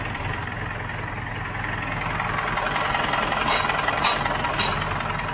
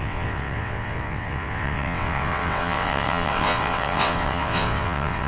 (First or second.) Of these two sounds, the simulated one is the second